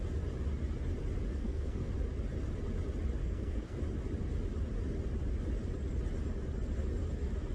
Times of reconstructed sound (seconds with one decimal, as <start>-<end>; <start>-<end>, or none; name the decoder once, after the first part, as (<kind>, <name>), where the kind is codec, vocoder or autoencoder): 1.3-1.9 (codec, SNAC); 3.2-3.8